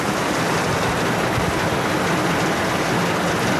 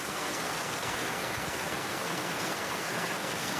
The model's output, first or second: second